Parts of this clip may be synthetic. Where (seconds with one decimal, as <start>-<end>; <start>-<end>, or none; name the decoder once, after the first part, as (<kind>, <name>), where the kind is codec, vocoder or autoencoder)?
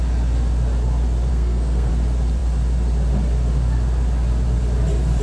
1.3-1.9 (codec, SNAC)